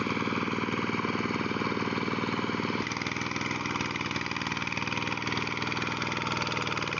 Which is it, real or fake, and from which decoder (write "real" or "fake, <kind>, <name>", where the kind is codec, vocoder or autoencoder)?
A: real